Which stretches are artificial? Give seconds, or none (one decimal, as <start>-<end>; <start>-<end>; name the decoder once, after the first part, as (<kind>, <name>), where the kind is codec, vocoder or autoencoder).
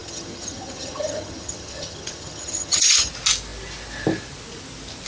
0.0-3.1 (vocoder, HiFi-GAN)